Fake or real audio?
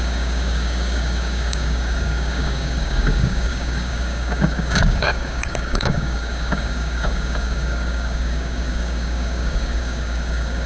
fake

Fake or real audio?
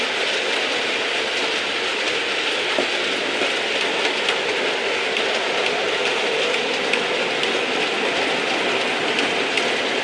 real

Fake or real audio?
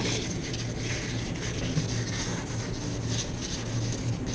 real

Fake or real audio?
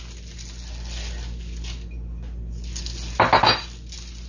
real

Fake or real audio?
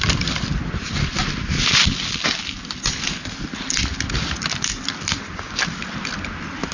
real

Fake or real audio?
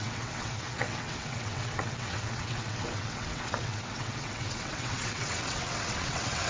fake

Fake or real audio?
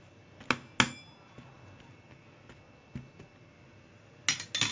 real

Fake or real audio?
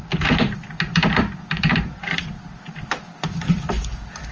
fake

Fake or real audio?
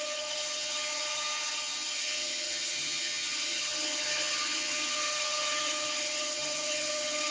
fake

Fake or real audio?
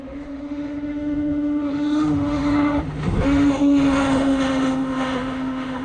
fake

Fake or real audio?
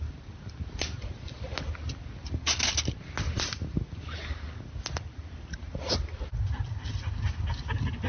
real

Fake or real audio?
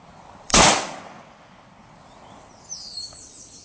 fake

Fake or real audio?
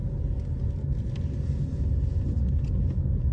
real